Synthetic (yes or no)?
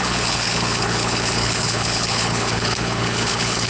yes